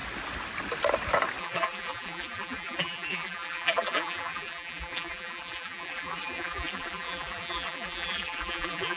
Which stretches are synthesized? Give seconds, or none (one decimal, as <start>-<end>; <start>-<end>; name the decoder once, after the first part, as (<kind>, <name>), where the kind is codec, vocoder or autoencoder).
1.4-9.0 (vocoder, BigVGAN v2)